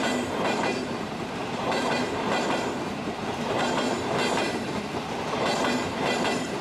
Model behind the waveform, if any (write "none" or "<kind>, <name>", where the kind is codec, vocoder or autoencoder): vocoder, BigVGAN v2